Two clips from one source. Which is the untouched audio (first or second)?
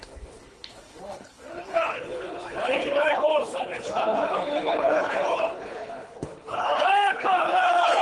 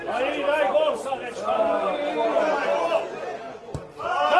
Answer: second